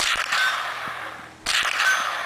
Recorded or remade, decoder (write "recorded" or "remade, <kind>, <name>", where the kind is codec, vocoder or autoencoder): recorded